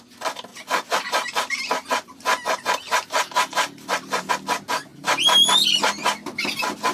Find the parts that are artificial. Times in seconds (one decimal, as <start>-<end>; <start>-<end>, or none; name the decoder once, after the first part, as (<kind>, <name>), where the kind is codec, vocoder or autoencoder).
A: 0.5-4.3 (vocoder, BigVGAN v2)